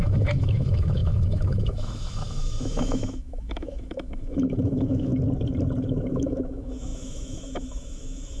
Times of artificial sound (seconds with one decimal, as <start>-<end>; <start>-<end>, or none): 0.0-5.1; 5.9-8.4